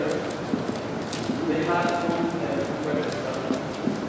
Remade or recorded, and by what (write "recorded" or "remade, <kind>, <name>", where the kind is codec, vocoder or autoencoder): recorded